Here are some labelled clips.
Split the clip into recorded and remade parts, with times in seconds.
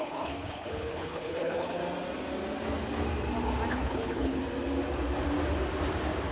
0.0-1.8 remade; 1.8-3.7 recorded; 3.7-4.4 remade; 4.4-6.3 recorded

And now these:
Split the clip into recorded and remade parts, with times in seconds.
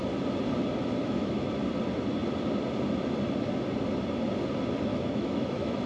0.0-1.0 recorded; 1.0-1.5 remade; 1.5-4.9 recorded; 4.9-5.9 remade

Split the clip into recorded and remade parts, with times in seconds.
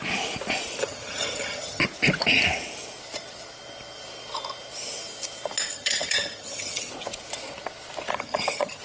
0.0-0.8 recorded; 0.8-1.8 remade; 1.8-5.7 recorded; 5.7-6.9 remade; 6.9-8.1 recorded; 8.1-8.8 remade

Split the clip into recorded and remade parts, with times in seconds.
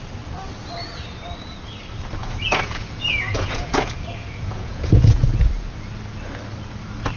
0.0-2.2 recorded; 2.2-5.5 remade; 5.5-7.2 recorded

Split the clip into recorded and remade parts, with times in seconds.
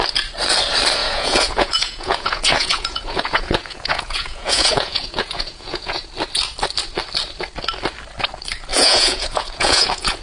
0.0-1.0 recorded; 1.0-6.1 remade; 6.1-8.7 recorded; 8.7-10.2 remade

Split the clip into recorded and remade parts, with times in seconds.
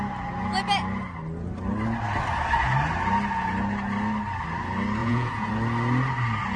0.0-5.0 recorded; 5.0-5.5 remade; 5.5-6.6 recorded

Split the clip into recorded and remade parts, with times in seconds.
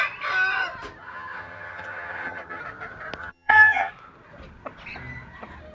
0.0-1.0 recorded; 1.0-2.6 remade; 2.6-3.2 recorded; 3.2-3.9 remade; 3.9-5.7 recorded